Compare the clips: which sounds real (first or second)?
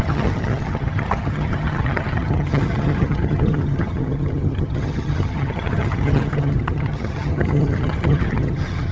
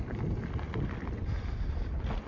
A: second